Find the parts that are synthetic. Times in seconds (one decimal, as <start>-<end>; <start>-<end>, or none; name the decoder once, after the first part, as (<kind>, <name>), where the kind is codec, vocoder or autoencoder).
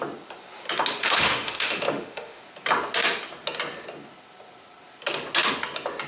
1.0-2.4 (autoencoder, DAC-VAE)